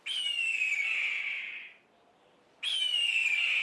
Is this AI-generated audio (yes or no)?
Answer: no